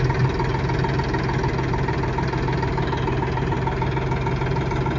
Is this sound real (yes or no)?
yes